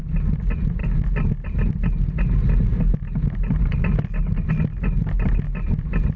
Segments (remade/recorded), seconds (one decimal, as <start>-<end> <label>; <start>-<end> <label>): 0.0-6.2 recorded